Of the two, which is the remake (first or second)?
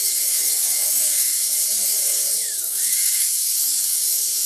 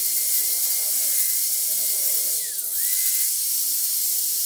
first